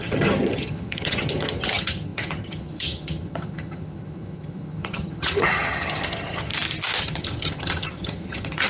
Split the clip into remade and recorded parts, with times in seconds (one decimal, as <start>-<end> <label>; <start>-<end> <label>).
0.0-6.5 remade; 6.5-7.0 recorded; 7.0-8.7 remade